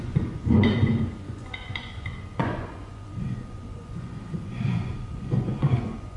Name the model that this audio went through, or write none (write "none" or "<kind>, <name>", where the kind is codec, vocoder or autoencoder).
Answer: vocoder, Vocos